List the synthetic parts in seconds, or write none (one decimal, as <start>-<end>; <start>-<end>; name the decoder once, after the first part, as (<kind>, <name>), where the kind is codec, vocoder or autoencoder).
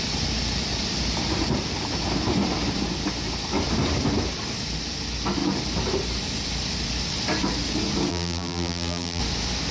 8.1-9.2 (vocoder, BigVGAN v2)